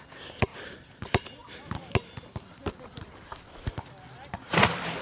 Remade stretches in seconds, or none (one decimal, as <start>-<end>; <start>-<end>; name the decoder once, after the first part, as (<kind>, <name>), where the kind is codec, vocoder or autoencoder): 0.5-1.9 (vocoder, BigVGAN v2)